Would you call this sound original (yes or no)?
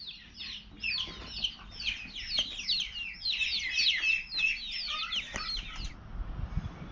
yes